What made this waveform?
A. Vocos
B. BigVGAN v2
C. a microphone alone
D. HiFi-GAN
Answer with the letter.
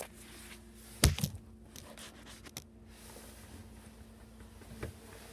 C